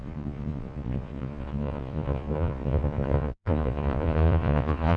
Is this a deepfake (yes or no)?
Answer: yes